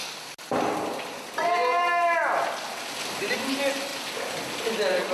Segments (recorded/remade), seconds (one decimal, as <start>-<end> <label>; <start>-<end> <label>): 0.0-5.1 recorded